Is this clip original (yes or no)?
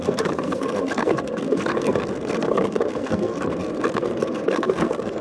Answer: no